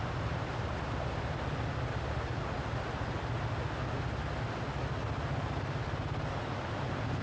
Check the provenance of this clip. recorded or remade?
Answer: recorded